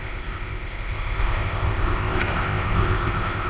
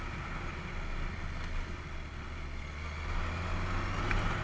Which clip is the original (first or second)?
second